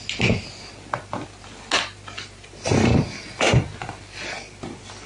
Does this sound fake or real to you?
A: real